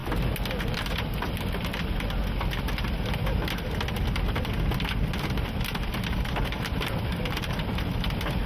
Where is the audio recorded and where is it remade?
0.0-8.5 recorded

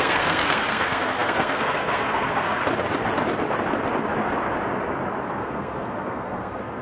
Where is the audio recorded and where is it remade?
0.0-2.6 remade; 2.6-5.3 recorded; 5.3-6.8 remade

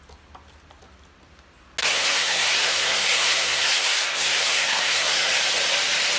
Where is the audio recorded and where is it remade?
0.0-1.8 recorded; 1.8-5.3 remade; 5.3-6.2 recorded